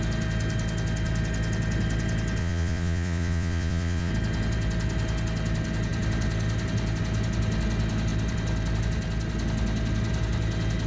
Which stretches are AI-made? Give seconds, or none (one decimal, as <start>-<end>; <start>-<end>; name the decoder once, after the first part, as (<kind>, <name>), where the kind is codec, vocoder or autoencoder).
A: 2.4-4.1 (vocoder, Vocos)